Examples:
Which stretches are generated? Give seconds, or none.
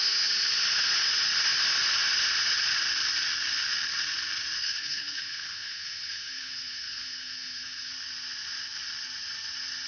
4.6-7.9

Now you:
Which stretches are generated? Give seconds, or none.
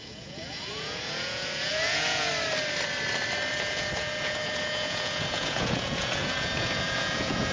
0.0-2.3; 3.5-7.5